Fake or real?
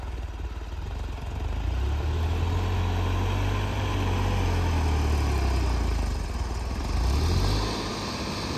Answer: real